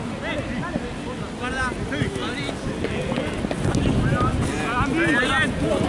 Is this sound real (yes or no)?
yes